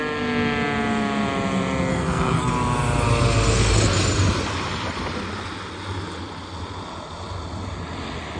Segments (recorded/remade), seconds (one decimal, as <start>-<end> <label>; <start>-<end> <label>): 0.0-1.9 recorded; 1.9-2.5 remade; 2.5-8.4 recorded